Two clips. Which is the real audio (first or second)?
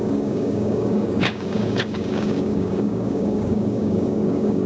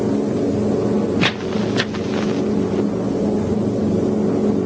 second